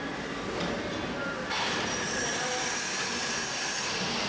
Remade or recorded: recorded